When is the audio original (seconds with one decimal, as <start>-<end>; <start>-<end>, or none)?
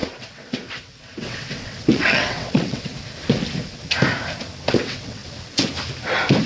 2.9-4.8; 5.2-6.5